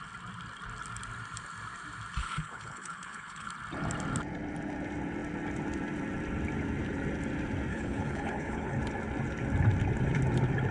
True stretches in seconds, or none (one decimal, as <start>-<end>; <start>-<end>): 0.0-2.2; 3.5-7.7; 8.8-10.7

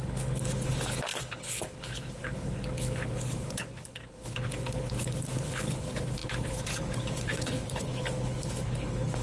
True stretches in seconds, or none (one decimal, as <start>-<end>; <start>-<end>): none

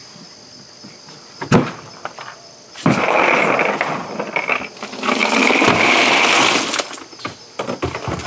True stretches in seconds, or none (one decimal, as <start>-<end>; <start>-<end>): 0.0-8.3

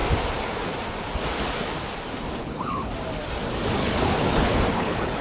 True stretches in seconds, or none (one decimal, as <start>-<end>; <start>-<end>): 0.0-2.4; 2.9-3.8

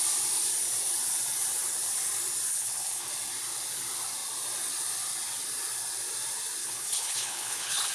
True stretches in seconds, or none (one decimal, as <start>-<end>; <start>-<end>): 0.0-2.5; 3.1-6.6

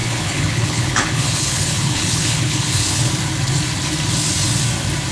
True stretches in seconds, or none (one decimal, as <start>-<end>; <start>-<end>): 3.1-5.1

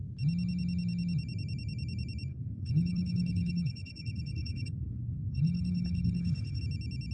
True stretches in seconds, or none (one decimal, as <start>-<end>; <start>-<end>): 0.0-2.3; 6.6-7.1